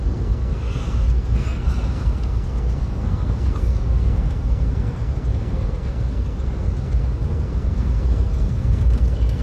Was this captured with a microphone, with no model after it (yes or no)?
no